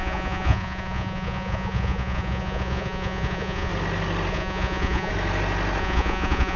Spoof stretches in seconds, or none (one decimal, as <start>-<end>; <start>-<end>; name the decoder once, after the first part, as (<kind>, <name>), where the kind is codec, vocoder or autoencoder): 0.0-3.7 (vocoder, Vocos); 4.3-5.1; 5.8-6.6